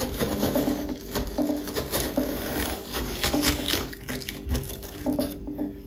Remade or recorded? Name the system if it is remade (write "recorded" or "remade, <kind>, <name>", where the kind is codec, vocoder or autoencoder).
remade, codec, DAC